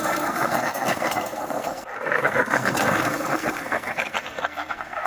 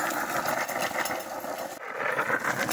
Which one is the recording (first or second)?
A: second